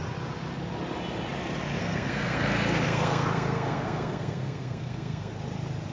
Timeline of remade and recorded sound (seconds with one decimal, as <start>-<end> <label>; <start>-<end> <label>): 0.0-1.8 recorded; 1.8-5.3 remade; 5.3-5.9 recorded